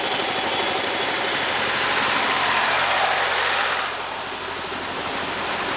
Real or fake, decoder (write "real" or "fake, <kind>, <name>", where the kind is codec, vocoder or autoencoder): real